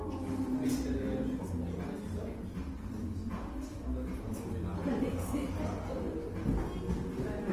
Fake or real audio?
real